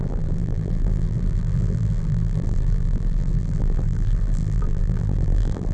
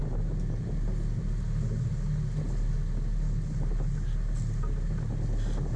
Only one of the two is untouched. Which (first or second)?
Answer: second